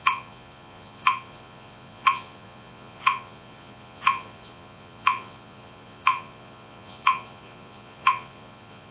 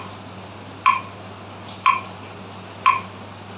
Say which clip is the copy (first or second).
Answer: first